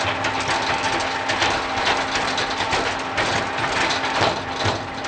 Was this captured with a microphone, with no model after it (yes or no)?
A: yes